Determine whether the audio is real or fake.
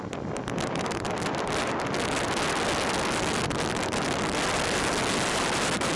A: real